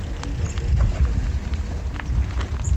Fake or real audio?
fake